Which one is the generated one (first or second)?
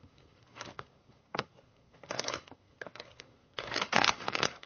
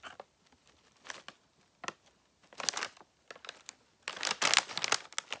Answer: first